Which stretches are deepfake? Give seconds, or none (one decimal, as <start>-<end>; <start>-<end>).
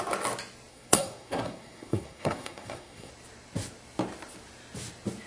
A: 0.7-3.1